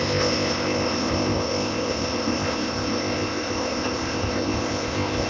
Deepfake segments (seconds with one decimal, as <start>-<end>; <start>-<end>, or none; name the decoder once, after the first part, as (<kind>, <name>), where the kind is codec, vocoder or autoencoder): 0.0-5.3 (codec, ZipCodec)